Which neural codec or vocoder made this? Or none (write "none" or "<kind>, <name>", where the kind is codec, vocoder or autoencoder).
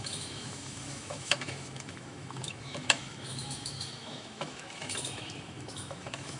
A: autoencoder, DAC-VAE